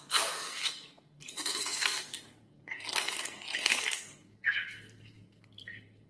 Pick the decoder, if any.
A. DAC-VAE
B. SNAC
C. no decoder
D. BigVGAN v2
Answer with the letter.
B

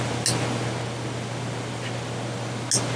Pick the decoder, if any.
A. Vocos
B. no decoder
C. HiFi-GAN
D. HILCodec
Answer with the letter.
B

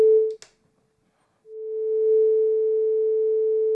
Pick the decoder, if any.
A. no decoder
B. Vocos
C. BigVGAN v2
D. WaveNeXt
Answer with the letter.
A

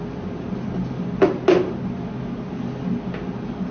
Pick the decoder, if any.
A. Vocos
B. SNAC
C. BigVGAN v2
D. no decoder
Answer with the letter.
D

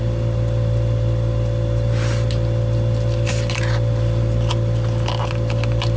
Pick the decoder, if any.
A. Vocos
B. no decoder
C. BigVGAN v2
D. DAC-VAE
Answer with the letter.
B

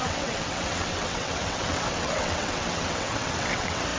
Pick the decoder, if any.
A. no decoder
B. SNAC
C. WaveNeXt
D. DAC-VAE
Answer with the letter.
C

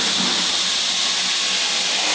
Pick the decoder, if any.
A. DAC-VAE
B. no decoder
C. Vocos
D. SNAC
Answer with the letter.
B